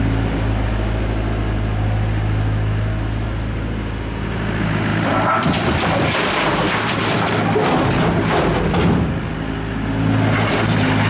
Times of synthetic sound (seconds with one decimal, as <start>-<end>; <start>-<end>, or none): 4.9-7.3